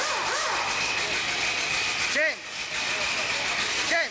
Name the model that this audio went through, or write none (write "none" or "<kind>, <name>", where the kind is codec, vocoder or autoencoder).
none